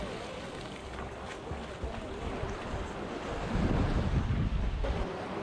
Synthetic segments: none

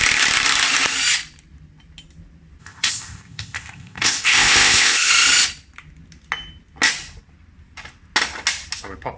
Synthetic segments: 2.6-5.1 (codec, ZipCodec)

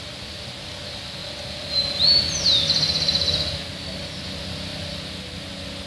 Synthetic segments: none